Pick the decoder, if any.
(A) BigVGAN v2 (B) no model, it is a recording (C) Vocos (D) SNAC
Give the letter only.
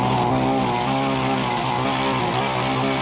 B